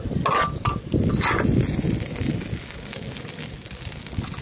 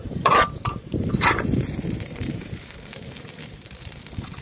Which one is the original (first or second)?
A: first